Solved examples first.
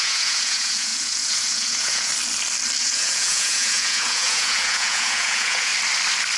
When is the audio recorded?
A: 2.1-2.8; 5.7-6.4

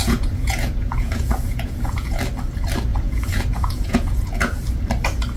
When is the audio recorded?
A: 2.2-2.9; 4.6-5.4

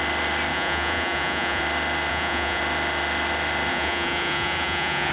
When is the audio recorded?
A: 0.0-0.5; 1.6-2.1; 2.6-3.7

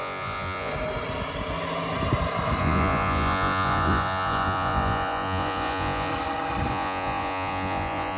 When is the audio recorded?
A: 0.7-2.6; 6.1-6.7

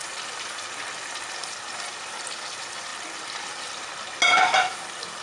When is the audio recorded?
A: 0.0-5.2

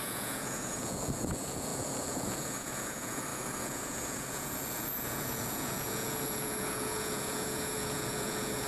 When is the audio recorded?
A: none

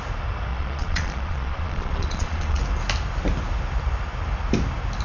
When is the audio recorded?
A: 0.0-0.5; 2.6-5.0

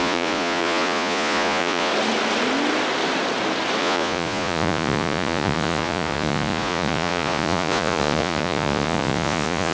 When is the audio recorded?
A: 1.9-3.8